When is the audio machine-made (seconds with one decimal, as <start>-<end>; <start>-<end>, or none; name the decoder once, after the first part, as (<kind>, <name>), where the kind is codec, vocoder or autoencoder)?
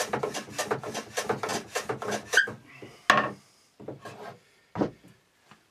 none